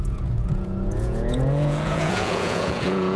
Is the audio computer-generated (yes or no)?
yes